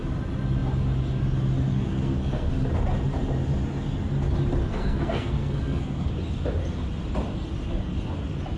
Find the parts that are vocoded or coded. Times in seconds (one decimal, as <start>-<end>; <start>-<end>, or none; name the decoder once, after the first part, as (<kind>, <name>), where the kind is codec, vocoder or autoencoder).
1.7-2.5 (codec, SNAC); 4.7-6.1